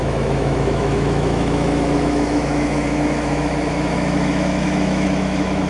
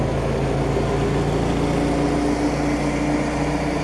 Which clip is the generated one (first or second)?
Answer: first